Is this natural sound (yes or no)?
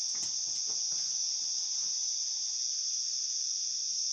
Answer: yes